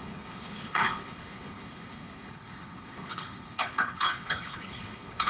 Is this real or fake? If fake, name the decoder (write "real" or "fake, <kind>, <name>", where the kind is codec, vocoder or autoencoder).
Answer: fake, codec, HILCodec